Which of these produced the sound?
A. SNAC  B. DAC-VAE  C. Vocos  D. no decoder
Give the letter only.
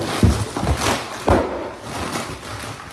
D